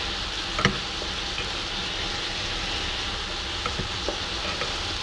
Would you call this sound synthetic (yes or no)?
no